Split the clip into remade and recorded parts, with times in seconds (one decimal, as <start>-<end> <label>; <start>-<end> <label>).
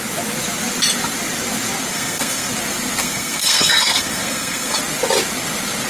0.0-1.9 recorded; 1.9-2.5 remade; 2.5-3.0 recorded; 3.0-4.8 remade; 4.8-5.9 recorded